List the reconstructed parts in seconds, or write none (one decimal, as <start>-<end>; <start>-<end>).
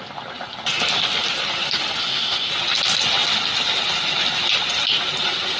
2.0-2.5